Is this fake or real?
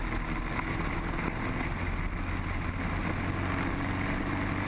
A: real